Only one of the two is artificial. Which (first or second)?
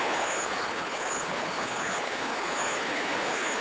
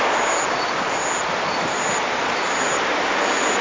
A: first